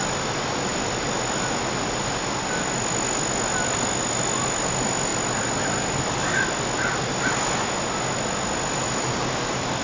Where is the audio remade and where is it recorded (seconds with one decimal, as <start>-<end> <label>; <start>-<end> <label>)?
0.0-9.8 recorded